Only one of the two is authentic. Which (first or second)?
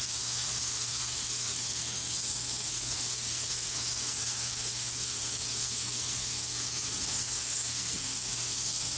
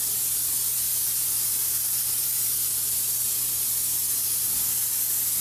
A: second